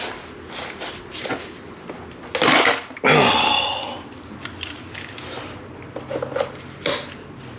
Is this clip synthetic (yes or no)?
no